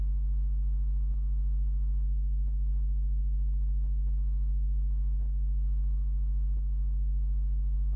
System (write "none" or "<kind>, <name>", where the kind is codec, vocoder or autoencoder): none